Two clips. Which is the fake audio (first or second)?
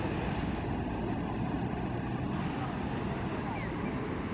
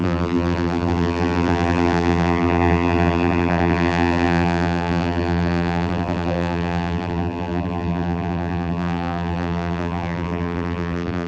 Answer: second